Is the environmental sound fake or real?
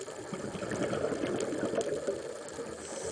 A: real